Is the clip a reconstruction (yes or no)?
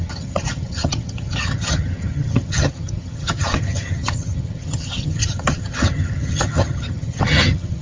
yes